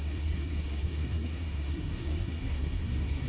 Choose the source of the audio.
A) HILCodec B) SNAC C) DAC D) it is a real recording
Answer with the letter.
B